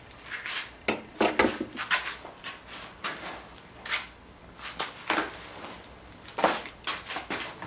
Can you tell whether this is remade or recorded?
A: recorded